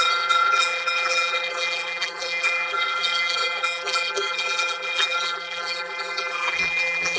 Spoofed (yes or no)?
yes